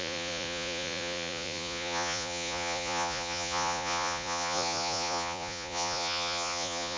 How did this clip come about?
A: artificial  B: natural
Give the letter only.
A